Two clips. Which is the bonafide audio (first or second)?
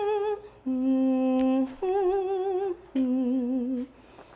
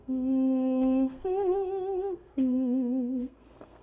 first